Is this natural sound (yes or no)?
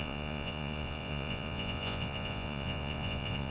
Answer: no